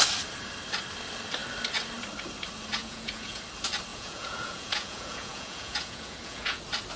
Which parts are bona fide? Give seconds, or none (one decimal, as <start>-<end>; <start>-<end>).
0.0-2.8; 3.4-3.9; 6.6-7.0